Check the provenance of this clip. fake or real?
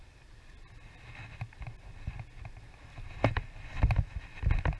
real